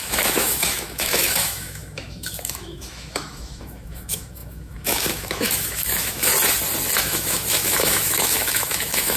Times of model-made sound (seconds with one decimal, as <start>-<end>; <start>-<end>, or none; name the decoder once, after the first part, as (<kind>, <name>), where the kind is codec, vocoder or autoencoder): 0.0-6.3 (autoencoder, DAC-VAE); 7.0-9.2